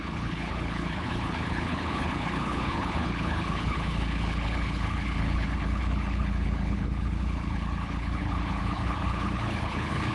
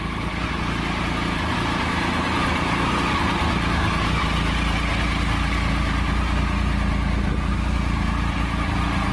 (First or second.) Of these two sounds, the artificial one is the first